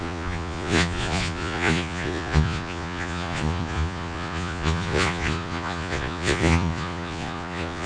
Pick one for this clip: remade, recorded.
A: remade